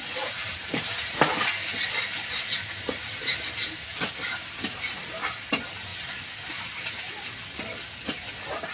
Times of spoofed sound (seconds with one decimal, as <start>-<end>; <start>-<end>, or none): 0.4-0.9; 1.6-5.4; 5.9-7.3